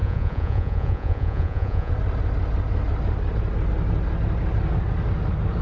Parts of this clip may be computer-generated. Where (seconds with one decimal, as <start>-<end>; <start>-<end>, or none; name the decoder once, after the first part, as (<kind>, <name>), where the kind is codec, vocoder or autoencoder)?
0.0-1.9 (vocoder, Vocos)